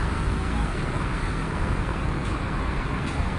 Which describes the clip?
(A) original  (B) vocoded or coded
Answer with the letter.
B